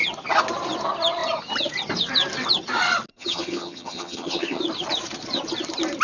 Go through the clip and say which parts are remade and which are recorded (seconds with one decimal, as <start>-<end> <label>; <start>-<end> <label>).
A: 0.0-3.1 recorded; 3.1-4.6 remade; 4.6-6.0 recorded